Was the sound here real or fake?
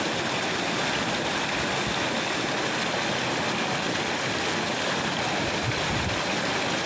real